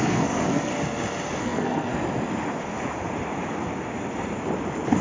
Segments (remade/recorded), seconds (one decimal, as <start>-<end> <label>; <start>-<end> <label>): 0.0-0.7 remade; 0.7-1.4 recorded; 1.4-1.9 remade; 1.9-5.0 recorded